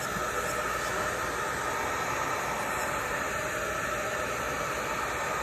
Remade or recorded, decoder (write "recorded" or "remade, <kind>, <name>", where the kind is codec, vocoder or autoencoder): recorded